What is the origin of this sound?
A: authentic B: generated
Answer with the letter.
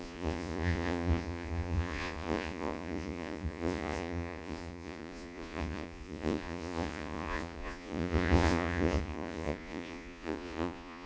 B